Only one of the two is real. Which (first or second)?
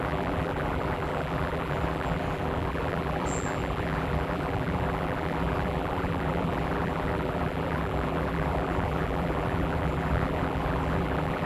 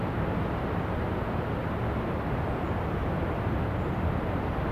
second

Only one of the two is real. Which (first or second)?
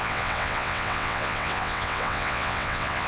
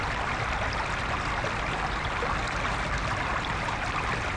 second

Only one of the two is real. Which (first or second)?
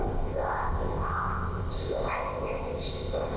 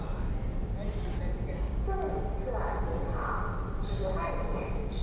second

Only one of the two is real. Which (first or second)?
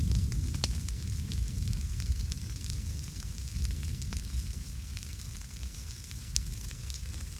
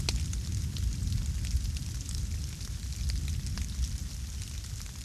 second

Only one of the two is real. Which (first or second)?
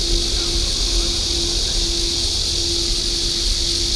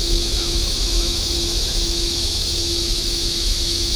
first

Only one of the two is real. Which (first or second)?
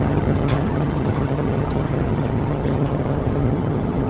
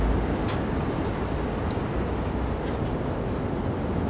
second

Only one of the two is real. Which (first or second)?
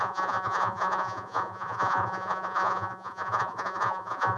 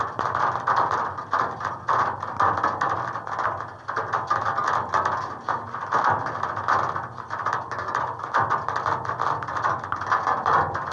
second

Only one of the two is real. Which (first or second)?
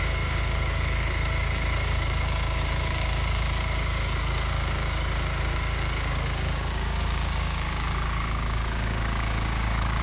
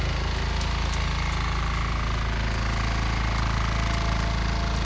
second